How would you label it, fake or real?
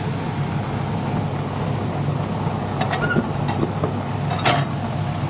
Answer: real